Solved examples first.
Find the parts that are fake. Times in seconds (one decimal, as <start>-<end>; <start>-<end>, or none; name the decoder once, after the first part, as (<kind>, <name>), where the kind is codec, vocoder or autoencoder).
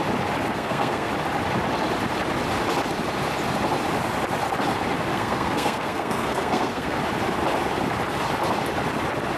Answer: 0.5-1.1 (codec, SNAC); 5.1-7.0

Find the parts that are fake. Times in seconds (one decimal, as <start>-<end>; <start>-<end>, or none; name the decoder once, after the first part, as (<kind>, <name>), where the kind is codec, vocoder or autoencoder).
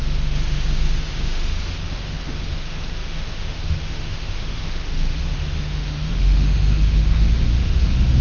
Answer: 0.0-8.2 (autoencoder, DAC-VAE)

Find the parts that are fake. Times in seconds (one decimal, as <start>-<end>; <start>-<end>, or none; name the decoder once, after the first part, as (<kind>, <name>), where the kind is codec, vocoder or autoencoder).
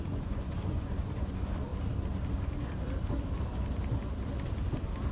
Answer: 0.0-1.7 (vocoder, Vocos)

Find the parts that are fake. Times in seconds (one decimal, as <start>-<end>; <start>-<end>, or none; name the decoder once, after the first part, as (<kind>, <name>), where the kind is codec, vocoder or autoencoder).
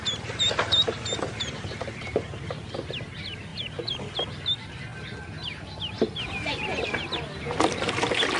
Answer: 3.5-4.0 (vocoder, BigVGAN v2)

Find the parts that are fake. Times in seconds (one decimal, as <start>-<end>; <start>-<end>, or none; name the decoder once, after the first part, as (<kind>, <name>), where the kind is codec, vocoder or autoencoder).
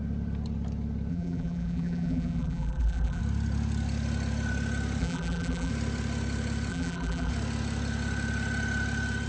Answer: 1.1-3.2 (vocoder, BigVGAN v2); 5.0-5.7; 6.7-7.3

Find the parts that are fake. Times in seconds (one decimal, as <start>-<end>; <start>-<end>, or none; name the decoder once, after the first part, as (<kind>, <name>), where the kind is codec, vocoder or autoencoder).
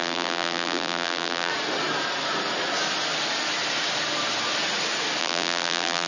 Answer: 0.0-1.5 (vocoder, BigVGAN v2); 5.2-6.1